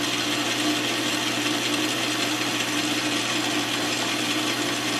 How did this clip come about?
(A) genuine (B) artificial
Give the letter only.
A